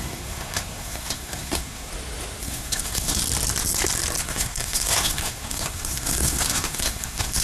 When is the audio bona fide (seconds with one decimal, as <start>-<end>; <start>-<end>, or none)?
1.9-2.4; 3.2-4.2